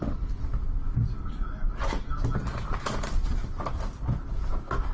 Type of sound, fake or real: real